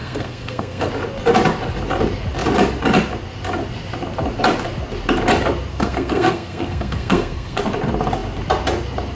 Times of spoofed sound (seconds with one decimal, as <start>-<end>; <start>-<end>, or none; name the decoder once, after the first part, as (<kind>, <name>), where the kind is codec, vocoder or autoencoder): 0.0-0.9 (codec, SNAC); 5.7-7.6

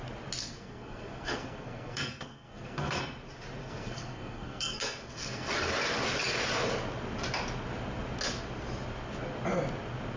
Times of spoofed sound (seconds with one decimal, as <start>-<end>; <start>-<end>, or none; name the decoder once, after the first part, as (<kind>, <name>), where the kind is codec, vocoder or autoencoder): 0.4-3.0 (codec, SNAC); 3.6-5.5

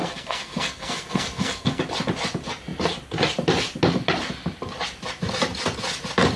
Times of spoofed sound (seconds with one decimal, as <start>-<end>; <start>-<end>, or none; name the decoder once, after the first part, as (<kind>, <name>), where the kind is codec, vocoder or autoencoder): 0.0-1.8 (codec, SNAC)